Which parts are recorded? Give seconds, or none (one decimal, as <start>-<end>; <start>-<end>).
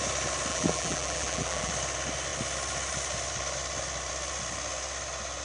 0.0-0.5; 1.7-5.4